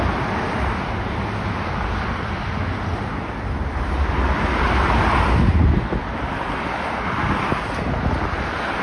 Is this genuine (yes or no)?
yes